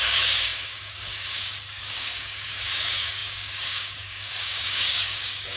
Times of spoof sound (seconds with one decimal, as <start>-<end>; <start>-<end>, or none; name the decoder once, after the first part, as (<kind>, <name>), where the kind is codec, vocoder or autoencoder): 0.0-5.6 (codec, DAC)